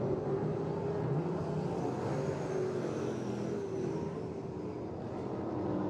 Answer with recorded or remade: recorded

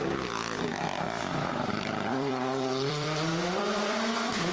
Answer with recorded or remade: remade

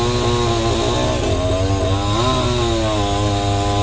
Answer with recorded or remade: recorded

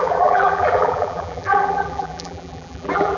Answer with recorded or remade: remade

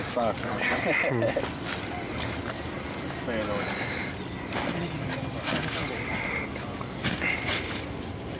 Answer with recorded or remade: recorded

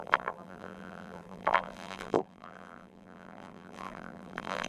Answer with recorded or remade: remade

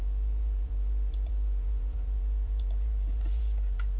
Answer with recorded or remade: remade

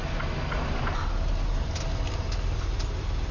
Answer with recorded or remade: recorded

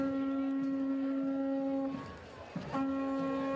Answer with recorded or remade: recorded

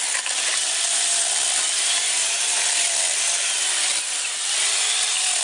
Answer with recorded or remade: remade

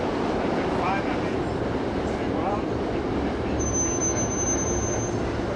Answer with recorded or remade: recorded